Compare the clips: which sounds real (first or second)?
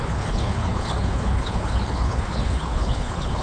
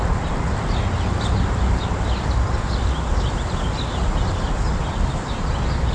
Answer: second